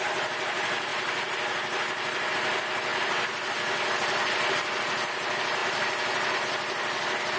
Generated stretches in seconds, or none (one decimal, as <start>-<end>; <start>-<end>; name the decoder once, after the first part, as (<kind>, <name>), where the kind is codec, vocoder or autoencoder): none